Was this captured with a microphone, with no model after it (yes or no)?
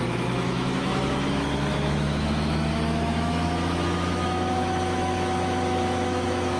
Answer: no